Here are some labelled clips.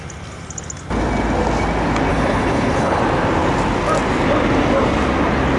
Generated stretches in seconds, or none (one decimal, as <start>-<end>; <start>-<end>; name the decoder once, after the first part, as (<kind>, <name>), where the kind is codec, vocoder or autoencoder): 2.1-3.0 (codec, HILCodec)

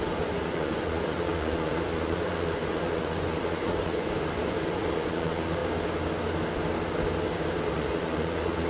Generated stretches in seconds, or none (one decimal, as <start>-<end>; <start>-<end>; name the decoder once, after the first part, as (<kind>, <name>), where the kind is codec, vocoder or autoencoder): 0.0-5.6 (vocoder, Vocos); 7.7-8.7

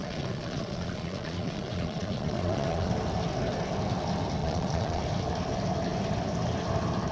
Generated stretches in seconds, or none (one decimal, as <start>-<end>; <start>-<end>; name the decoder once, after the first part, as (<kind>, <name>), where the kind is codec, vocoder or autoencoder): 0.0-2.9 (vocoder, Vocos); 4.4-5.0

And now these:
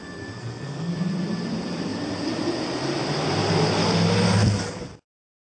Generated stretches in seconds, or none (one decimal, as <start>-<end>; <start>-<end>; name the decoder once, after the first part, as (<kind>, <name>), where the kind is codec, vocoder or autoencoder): 0.4-0.9 (codec, SNAC)

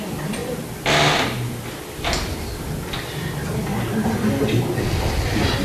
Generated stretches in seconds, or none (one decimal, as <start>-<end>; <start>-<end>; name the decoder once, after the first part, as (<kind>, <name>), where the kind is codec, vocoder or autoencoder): 0.0-0.4 (vocoder, BigVGAN v2); 1.9-3.7